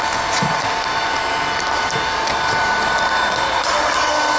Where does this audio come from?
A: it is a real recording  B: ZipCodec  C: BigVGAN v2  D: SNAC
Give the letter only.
A